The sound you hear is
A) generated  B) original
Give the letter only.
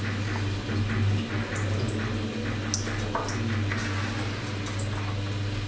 B